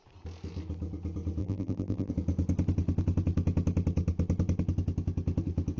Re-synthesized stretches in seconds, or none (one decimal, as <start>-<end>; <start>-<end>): 1.4-2.1